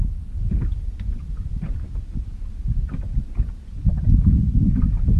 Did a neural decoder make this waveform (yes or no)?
no